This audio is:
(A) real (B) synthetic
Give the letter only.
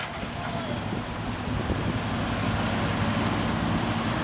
A